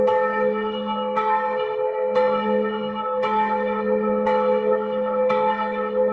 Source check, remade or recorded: remade